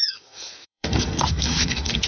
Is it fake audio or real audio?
fake